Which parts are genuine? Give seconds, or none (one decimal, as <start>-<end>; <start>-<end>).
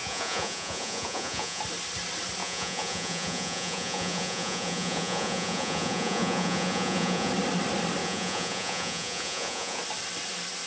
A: 1.6-2.4; 7.3-8.0; 9.8-10.7